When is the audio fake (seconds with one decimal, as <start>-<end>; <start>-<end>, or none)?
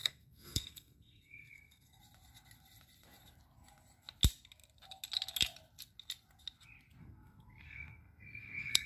0.0-2.0; 7.0-8.9